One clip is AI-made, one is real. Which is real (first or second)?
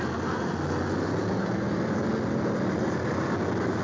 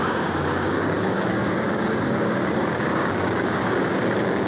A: first